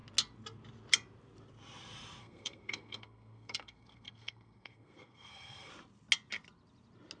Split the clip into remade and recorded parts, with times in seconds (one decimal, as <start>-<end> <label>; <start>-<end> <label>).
0.0-2.2 recorded; 2.2-5.7 remade; 5.7-7.2 recorded